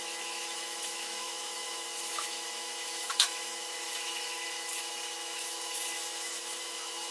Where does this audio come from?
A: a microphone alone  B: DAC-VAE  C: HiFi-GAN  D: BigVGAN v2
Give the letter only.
B